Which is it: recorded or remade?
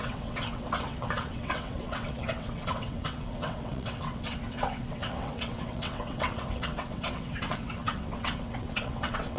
remade